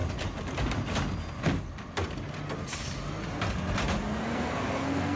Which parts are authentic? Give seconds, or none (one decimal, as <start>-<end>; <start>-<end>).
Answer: 0.0-4.3